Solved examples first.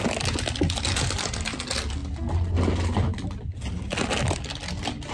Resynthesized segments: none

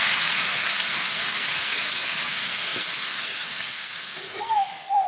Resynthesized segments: 0.0-5.1 (codec, SNAC)